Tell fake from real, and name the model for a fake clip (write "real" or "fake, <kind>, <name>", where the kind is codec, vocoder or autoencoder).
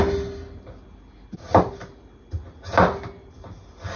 real